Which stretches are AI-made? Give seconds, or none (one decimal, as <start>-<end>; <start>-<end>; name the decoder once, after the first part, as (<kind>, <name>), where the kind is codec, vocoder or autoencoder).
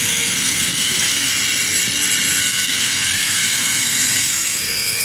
0.0-1.3 (codec, SNAC); 2.4-5.0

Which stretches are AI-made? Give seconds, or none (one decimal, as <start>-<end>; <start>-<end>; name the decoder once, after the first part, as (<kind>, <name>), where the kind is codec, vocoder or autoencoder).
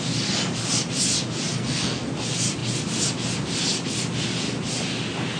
1.5-2.1 (codec, SNAC)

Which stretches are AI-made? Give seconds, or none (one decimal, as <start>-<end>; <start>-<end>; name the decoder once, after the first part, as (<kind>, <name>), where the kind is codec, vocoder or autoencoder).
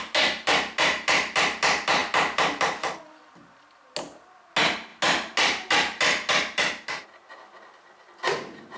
none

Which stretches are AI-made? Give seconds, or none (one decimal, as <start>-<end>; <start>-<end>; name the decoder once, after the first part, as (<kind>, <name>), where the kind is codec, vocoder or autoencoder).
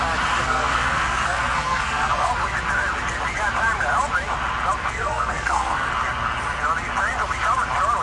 0.4-2.3 (codec, SNAC); 4.8-5.9